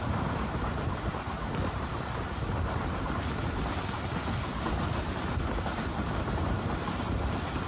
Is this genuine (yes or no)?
no